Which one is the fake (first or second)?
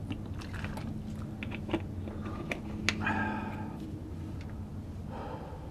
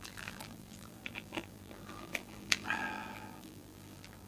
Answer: second